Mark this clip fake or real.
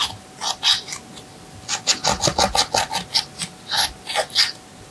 real